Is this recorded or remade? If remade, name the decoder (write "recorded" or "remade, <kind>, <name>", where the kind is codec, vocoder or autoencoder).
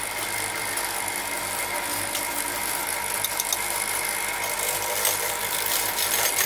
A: recorded